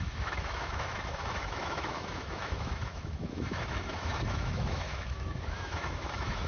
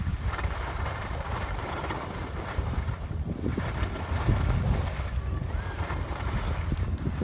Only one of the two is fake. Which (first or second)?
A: first